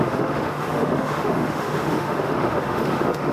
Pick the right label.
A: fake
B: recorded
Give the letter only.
A